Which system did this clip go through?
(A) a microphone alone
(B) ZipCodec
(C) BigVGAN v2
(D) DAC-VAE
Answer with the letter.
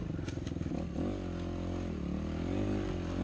A